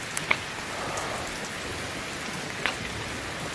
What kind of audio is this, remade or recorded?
recorded